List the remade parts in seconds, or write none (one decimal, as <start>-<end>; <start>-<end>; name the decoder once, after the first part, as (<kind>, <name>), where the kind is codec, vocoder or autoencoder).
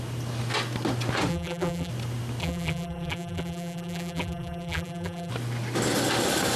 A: 1.3-1.9 (vocoder, BigVGAN v2); 2.4-5.3